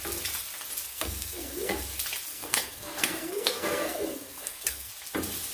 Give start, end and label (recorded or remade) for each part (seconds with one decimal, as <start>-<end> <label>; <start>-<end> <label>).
0.0-0.9 recorded; 0.9-1.8 remade; 1.8-2.3 recorded; 2.3-4.9 remade; 4.9-5.5 recorded